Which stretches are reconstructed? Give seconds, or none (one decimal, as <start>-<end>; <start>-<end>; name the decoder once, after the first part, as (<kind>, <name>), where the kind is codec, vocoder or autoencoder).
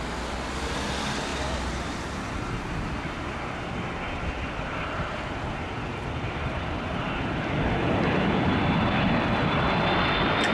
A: 1.3-2.3 (vocoder, BigVGAN v2)